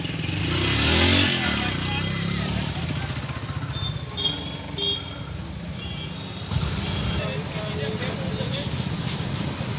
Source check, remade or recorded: recorded